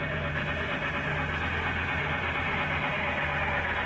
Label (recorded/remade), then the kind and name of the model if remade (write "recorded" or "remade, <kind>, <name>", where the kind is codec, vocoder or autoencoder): recorded